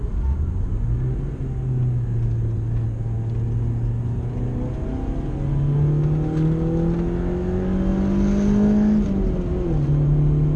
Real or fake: real